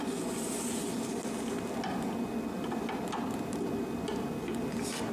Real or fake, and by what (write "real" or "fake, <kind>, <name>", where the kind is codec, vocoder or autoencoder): real